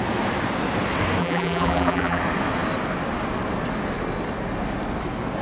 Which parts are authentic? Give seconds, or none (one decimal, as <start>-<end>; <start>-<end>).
0.0-1.2; 2.2-5.4